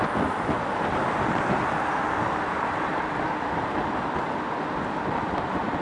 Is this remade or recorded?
recorded